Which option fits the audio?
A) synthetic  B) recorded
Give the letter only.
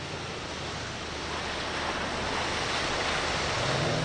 B